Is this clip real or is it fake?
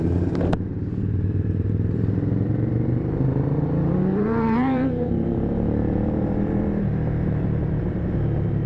fake